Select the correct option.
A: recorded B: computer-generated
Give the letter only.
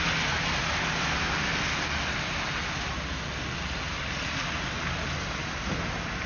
A